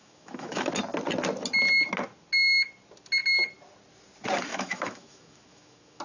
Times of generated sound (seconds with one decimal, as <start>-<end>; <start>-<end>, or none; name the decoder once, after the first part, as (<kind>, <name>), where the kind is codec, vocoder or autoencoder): 0.0-0.7 (autoencoder, DAC-VAE); 4.5-6.0